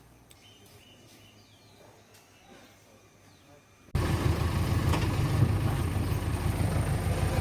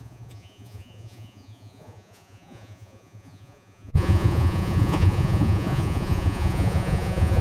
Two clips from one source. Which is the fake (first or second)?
second